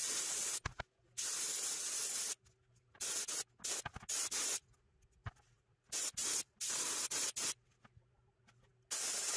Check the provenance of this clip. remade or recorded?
recorded